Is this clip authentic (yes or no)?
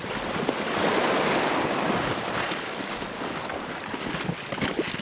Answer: yes